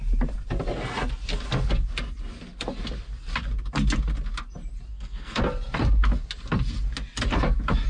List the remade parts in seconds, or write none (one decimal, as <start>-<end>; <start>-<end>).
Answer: 4.9-5.4